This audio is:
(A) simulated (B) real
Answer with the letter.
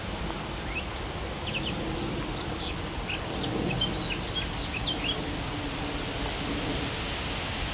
B